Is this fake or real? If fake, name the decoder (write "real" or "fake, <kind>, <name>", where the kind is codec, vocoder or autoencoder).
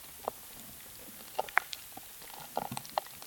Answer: real